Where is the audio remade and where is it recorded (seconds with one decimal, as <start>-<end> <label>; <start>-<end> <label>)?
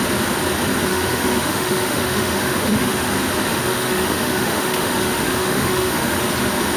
0.0-0.9 recorded; 0.9-3.1 remade; 3.1-3.5 recorded; 3.5-6.3 remade; 6.3-6.8 recorded